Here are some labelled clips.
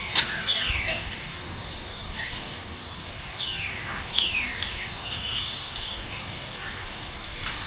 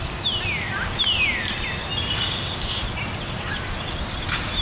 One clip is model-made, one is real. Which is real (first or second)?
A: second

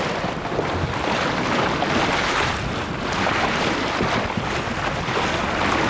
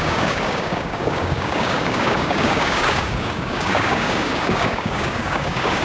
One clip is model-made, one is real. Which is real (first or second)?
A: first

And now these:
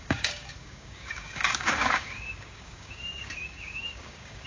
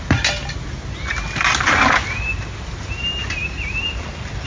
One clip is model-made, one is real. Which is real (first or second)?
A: second